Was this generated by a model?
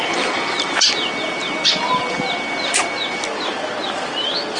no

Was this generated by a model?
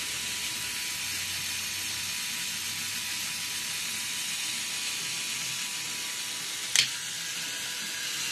no